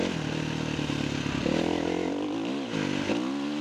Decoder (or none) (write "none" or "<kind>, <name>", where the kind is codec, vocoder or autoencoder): none